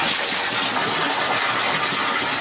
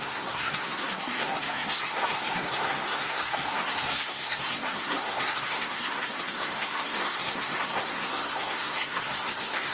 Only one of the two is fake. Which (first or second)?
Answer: second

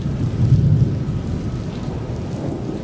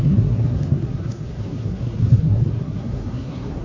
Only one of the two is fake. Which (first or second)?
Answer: second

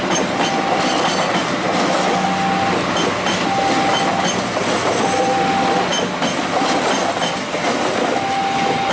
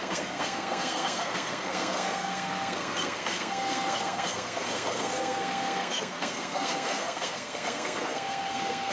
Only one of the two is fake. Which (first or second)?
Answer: second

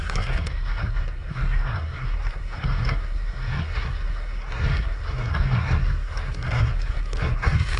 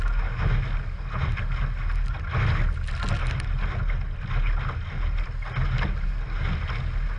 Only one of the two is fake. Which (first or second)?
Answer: first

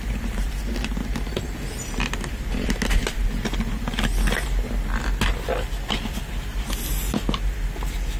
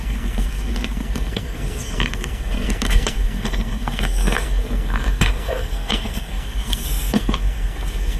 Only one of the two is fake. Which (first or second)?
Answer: second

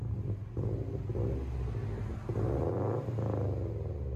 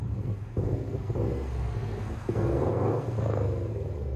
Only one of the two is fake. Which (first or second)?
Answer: second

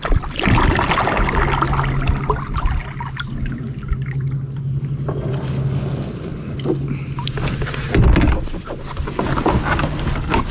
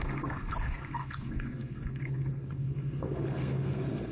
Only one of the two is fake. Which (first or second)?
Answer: second